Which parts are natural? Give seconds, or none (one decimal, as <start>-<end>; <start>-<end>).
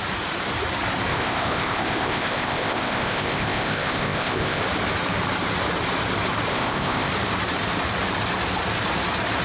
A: 0.0-1.1; 4.6-6.5; 7.1-9.4